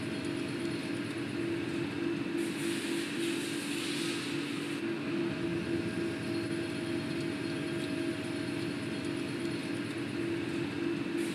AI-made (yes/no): no